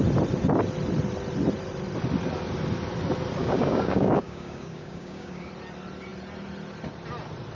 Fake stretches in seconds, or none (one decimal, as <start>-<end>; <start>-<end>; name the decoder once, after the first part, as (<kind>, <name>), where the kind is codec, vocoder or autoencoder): 3.4-5.5 (codec, DAC)